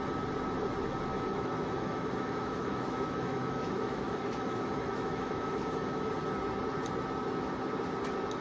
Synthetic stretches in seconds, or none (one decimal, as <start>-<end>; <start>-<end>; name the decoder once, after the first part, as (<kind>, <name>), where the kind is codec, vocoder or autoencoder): 1.1-6.1 (autoencoder, DAC-VAE)